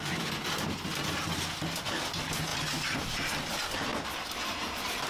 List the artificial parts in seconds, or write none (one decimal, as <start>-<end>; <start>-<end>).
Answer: 2.5-3.5; 3.9-5.1